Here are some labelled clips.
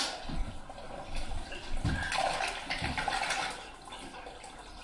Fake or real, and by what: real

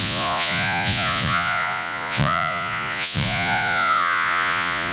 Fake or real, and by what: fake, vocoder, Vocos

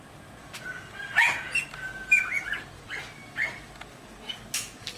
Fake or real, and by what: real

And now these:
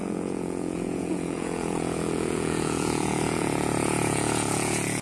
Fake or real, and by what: fake, vocoder, Vocos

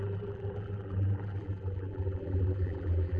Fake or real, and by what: fake, vocoder, BigVGAN v2